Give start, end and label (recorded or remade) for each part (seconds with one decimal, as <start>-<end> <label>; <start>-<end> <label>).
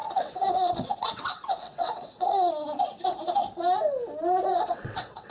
0.0-2.5 remade; 2.5-4.5 recorded; 4.5-5.3 remade